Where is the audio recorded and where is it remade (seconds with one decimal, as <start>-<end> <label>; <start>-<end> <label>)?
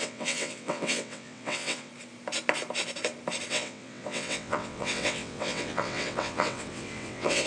0.0-1.9 remade; 1.9-3.5 recorded; 3.5-7.5 remade